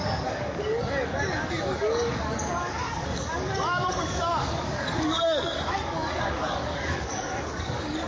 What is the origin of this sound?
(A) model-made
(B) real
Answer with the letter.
A